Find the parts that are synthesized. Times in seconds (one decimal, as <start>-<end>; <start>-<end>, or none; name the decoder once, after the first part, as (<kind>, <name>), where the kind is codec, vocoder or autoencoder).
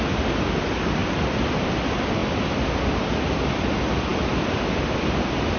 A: 4.1-4.8 (vocoder, BigVGAN v2)